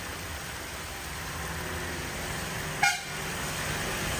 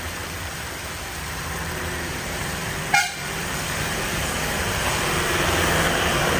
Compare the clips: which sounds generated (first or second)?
second